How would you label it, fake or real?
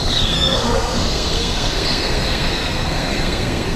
fake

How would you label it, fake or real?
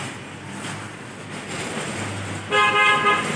real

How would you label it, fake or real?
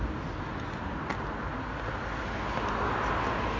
real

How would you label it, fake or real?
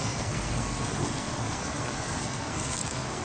fake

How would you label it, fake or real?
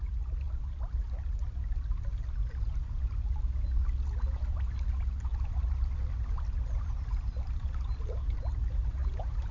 real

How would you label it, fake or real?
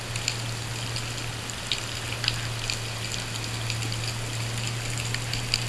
real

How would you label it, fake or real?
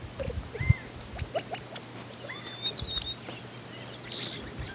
real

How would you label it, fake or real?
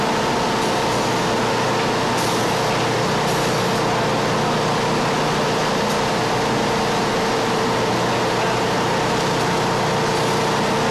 real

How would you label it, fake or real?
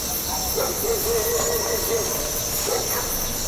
real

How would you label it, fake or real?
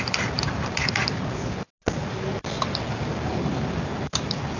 real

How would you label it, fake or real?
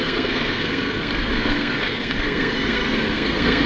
fake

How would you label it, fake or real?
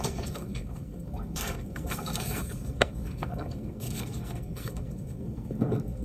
fake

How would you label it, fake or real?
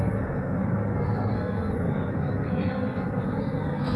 fake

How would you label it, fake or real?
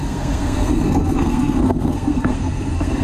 fake